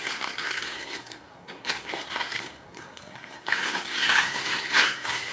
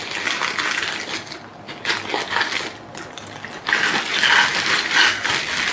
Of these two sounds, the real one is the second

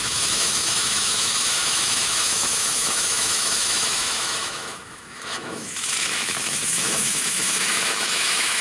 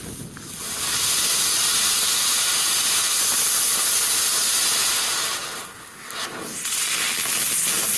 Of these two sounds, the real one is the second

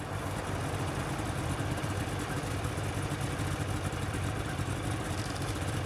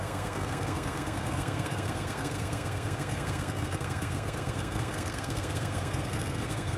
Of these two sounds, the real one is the first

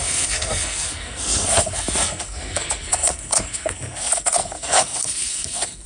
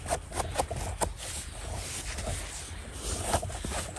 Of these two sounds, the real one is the second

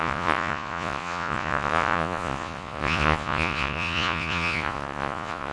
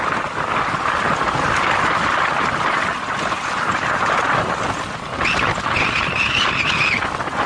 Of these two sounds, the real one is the second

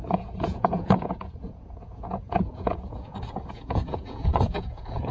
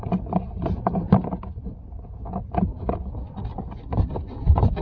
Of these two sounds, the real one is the second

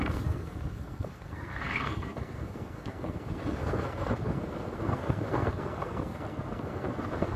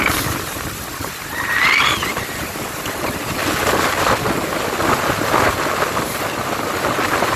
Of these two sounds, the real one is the second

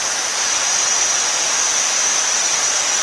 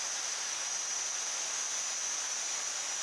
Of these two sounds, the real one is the second